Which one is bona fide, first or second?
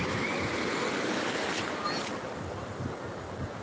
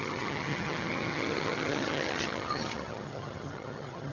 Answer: first